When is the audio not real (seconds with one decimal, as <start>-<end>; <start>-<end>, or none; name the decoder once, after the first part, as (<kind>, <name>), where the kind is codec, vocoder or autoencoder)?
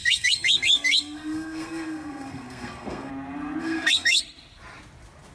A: 0.0-3.1 (codec, SNAC); 3.6-4.2